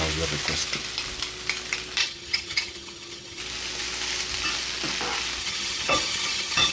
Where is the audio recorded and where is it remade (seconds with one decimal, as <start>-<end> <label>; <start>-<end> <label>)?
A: 0.0-2.0 recorded; 2.0-3.4 remade; 3.4-5.4 recorded; 5.4-6.7 remade